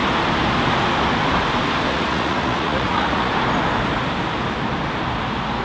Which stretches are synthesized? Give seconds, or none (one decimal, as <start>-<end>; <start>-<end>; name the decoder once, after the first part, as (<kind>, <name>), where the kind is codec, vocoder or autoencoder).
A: 1.9-3.3 (vocoder, Vocos)